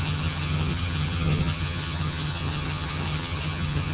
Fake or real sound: fake